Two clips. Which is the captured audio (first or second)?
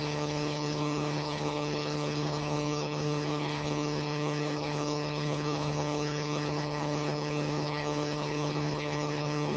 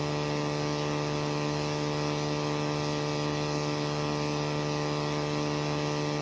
second